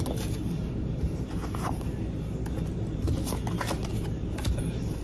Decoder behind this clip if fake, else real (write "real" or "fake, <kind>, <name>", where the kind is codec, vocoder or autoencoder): real